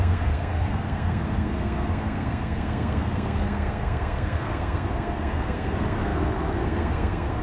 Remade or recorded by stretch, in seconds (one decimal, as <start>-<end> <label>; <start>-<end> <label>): 0.0-7.4 remade